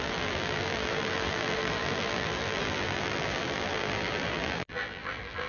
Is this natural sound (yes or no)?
no